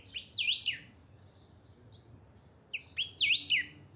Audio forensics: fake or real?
real